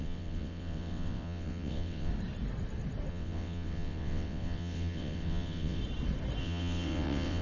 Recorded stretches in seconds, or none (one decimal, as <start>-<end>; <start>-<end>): 2.1-3.1; 5.8-6.4